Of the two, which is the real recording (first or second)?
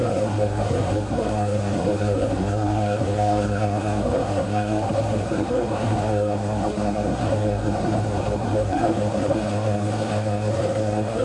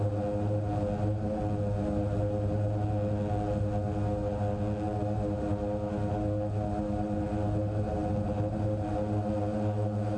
second